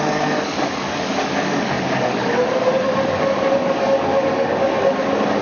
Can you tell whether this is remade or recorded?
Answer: remade